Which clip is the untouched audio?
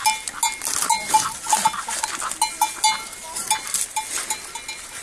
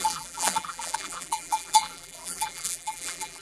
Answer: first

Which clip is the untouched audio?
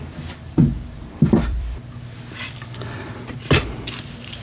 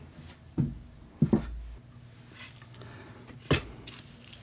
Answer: second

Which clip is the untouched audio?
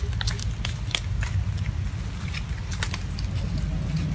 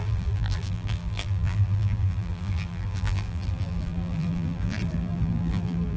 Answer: first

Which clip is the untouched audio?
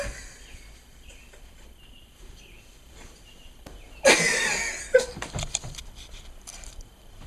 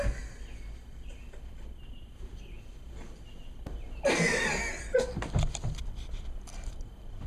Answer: second